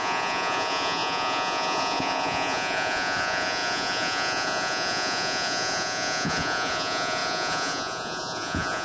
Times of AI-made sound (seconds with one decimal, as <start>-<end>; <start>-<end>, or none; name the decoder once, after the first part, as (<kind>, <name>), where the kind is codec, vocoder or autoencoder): 0.0-8.8 (vocoder, Vocos)